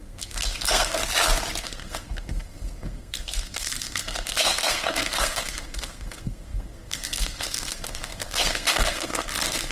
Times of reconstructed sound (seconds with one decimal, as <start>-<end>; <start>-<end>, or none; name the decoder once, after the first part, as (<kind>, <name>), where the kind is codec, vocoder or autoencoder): 0.0-1.0 (codec, SNAC); 1.6-9.7